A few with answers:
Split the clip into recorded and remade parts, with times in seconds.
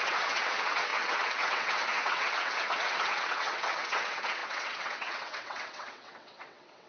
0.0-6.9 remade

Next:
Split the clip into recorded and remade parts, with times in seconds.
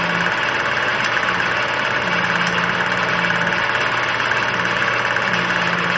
0.0-6.0 recorded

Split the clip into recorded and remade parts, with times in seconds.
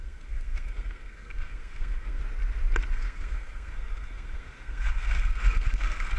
0.0-2.2 remade; 2.2-2.9 recorded; 2.9-6.2 remade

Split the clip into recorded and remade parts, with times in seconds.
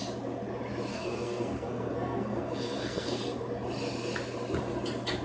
0.0-0.9 recorded; 0.9-3.2 remade; 3.2-5.2 recorded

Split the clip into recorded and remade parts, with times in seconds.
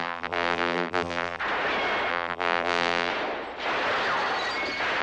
0.0-1.4 remade; 1.4-2.1 recorded; 2.1-3.1 remade; 3.1-5.0 recorded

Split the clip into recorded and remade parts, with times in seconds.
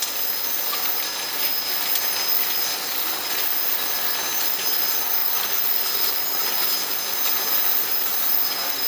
0.0-8.9 recorded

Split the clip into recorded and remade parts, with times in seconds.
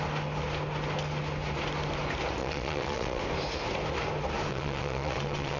0.0-2.4 recorded; 2.4-3.2 remade; 3.2-4.5 recorded; 4.5-5.6 remade